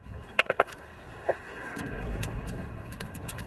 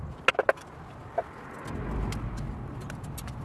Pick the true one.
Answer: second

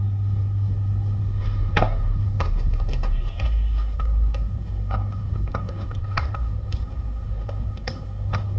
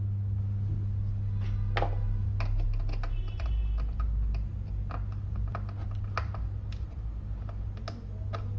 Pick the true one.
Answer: second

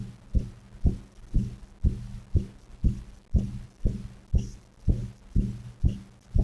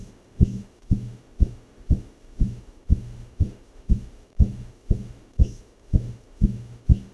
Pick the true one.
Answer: first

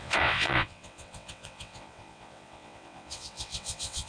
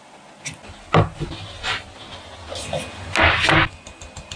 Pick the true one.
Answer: second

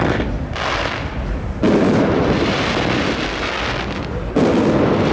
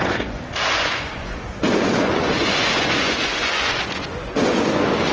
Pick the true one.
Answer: first